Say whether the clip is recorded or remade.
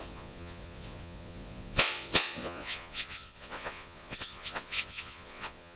remade